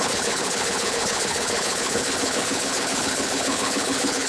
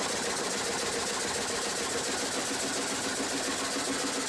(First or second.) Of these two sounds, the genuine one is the second